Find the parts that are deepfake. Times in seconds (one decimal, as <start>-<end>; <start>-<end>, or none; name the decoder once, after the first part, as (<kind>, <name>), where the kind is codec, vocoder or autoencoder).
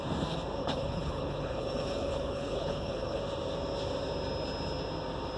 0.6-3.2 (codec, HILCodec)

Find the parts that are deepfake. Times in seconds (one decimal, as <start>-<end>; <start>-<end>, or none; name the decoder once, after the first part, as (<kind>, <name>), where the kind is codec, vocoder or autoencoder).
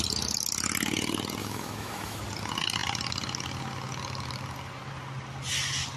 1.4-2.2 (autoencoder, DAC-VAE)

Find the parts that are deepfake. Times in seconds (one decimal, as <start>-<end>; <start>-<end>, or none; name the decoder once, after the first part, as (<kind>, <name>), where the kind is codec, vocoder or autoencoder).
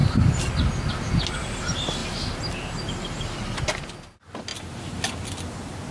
2.0-3.9 (vocoder, BigVGAN v2)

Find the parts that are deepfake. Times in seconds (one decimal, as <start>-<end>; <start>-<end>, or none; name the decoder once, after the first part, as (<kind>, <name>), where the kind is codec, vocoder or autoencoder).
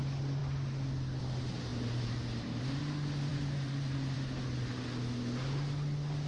1.7-2.8 (vocoder, BigVGAN v2); 3.3-4.4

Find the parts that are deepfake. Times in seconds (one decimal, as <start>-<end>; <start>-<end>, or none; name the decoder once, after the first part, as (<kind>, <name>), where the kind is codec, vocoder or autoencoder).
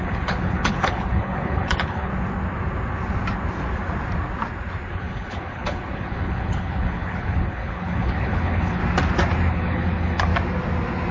0.0-2.1 (codec, HILCodec); 4.9-8.8; 9.5-10.3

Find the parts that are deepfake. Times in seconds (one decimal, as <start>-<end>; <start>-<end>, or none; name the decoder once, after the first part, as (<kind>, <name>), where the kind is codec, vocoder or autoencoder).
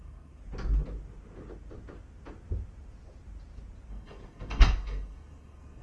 0.0-0.4 (codec, SNAC); 3.9-5.8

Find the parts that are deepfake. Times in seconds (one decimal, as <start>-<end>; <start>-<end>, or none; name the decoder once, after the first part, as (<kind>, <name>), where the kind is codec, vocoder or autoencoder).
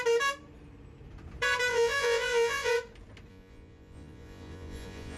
1.7-2.7 (vocoder, Vocos); 3.3-5.2